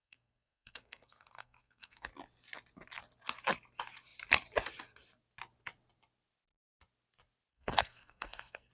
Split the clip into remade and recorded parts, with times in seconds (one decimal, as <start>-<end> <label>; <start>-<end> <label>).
0.0-2.1 remade; 2.1-7.5 recorded; 7.5-8.7 remade